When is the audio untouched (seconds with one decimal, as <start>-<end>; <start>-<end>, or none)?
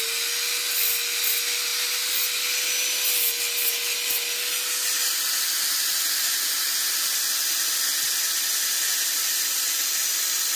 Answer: 0.0-10.6